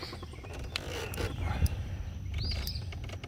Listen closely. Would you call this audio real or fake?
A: real